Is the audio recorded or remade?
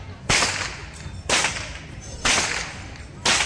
recorded